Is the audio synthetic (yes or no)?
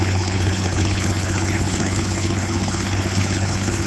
yes